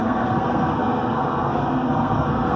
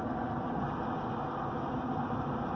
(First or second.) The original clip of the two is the second